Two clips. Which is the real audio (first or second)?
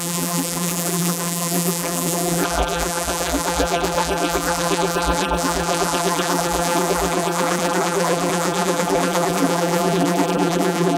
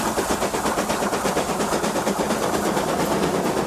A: second